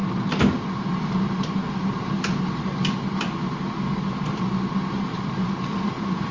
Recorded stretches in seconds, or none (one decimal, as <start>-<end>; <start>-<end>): none